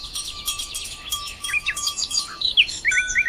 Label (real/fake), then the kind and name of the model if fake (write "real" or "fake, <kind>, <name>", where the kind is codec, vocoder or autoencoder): fake, autoencoder, DAC-VAE